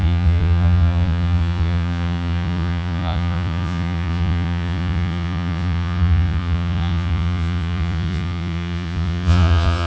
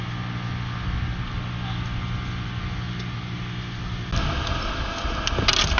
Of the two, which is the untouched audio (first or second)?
second